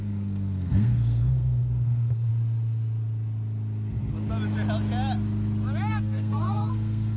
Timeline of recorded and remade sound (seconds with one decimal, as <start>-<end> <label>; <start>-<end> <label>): 0.0-2.3 remade; 2.3-5.9 recorded; 5.9-7.2 remade